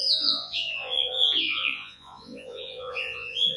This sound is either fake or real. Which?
fake